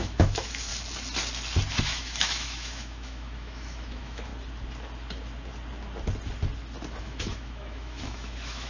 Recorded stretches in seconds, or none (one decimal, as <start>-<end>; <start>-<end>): 0.7-1.8; 4.3-7.0

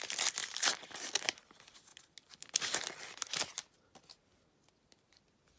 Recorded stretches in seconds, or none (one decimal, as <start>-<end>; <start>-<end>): 0.0-5.6

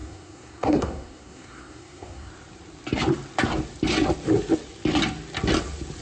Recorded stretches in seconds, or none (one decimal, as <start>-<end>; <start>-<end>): 2.3-6.0

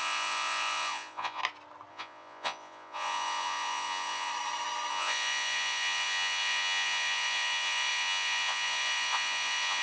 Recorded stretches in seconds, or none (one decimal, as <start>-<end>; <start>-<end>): 1.4-1.9; 4.3-4.9

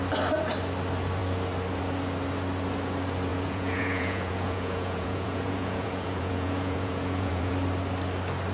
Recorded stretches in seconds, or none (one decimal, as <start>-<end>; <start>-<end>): 0.0-3.3; 7.5-8.5

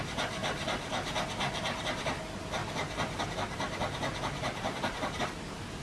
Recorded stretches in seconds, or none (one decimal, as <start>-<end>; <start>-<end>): 2.6-3.2

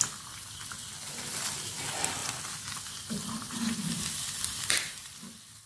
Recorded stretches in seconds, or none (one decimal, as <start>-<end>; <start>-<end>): 0.0-2.2

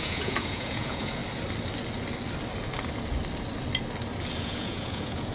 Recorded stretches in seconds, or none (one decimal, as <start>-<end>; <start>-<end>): 1.2-4.4